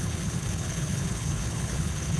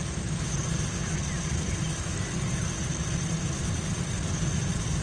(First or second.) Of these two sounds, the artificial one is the first